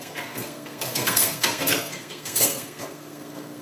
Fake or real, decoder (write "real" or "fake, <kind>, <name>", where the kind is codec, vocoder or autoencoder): fake, codec, SNAC